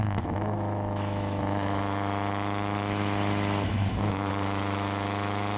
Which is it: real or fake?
fake